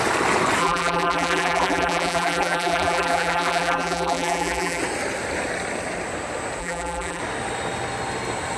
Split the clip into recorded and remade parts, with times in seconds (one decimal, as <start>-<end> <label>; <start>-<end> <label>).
0.0-0.6 recorded; 0.6-4.8 remade; 4.8-6.6 recorded; 6.6-7.2 remade; 7.2-8.6 recorded